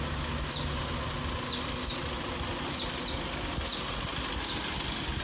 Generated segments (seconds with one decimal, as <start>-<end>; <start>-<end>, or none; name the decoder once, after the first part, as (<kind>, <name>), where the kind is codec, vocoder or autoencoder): none